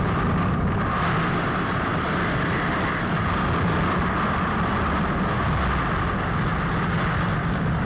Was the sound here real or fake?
real